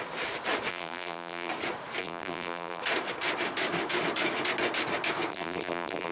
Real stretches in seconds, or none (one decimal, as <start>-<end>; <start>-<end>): 0.0-0.7; 1.5-2.0; 2.8-5.3